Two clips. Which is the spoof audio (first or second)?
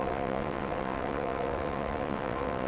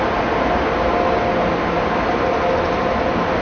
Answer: first